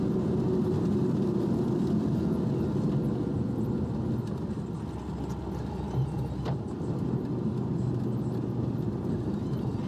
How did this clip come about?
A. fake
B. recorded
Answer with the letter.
B